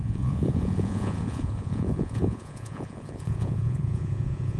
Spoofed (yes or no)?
yes